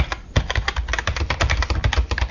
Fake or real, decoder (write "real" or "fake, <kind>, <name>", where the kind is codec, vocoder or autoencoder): real